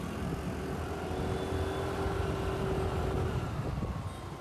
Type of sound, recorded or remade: recorded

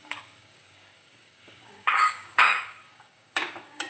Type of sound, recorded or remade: remade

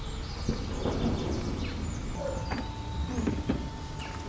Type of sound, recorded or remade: recorded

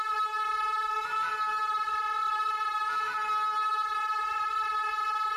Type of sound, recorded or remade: recorded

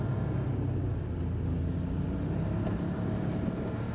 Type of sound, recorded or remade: recorded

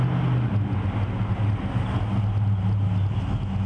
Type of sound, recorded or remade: recorded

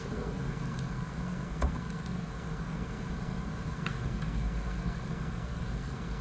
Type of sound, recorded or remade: remade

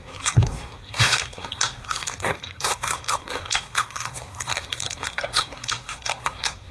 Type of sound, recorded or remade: remade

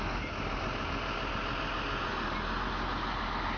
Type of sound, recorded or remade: recorded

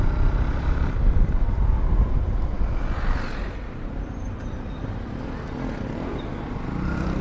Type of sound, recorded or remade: recorded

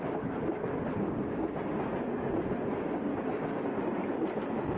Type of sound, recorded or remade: recorded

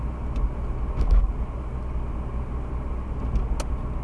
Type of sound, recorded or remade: recorded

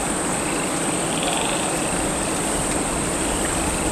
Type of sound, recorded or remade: recorded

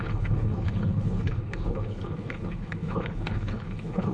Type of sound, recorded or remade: remade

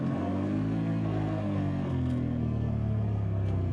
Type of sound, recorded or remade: remade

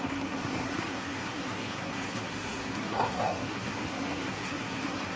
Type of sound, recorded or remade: remade